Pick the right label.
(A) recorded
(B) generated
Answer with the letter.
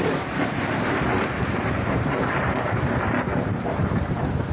B